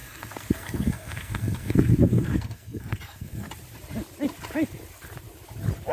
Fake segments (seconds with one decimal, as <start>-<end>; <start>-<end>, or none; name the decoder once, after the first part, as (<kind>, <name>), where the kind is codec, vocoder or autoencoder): 0.0-3.5 (codec, SNAC)

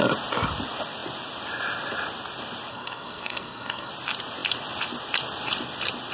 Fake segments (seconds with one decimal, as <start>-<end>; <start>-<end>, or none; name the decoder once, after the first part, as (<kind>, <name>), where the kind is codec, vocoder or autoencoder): 2.7-3.9 (codec, SNAC)